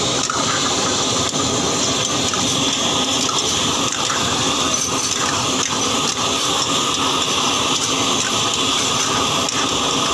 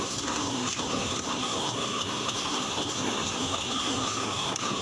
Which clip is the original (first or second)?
first